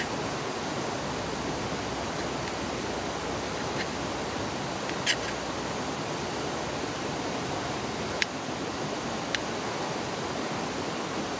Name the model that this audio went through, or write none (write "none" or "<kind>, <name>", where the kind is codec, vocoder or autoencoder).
none